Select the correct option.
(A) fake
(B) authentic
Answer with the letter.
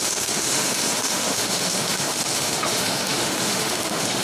A